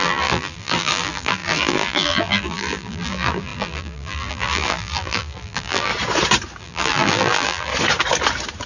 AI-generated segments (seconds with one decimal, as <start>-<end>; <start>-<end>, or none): 0.0-5.9; 6.6-7.7